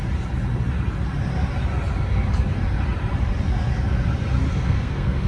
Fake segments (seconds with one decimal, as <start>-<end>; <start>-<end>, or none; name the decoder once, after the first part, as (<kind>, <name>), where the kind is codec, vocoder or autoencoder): 4.5-5.3 (codec, SNAC)

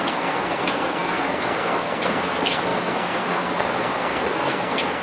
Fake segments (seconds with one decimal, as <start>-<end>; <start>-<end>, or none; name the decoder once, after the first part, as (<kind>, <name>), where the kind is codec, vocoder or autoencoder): 0.0-5.0 (codec, SNAC)

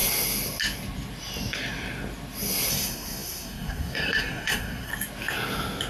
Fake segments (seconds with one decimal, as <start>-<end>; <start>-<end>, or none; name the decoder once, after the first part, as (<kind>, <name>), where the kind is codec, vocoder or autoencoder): 2.7-4.9 (codec, SNAC)

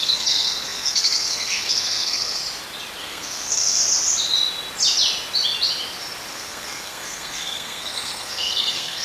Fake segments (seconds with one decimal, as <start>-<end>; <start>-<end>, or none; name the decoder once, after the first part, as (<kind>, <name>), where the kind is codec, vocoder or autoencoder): 0.0-2.4 (codec, SNAC); 3.0-3.8; 6.3-9.0

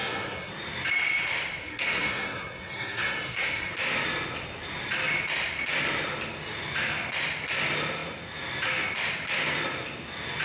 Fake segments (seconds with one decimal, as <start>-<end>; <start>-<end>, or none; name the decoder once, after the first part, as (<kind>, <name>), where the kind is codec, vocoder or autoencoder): 0.0-0.5 (codec, SNAC); 1.6-3.7

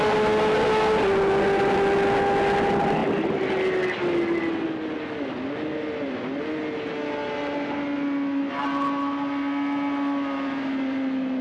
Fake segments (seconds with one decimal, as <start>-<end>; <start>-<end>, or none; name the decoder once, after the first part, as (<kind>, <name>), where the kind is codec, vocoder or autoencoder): none